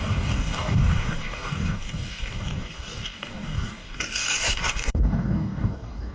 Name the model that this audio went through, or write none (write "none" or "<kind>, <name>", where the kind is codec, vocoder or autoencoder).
codec, DAC